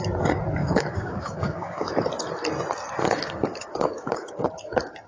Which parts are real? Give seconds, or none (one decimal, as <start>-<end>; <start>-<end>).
0.0-0.6; 1.9-3.0; 4.5-5.1